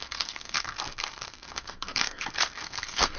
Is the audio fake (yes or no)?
yes